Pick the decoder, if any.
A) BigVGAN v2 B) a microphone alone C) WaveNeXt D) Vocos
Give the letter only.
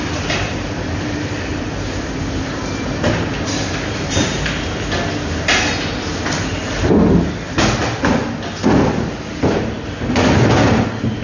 B